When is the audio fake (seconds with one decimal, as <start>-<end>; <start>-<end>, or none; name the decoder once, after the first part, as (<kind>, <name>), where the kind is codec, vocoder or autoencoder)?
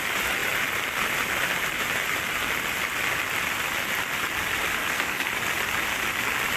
4.8-5.3 (codec, SNAC)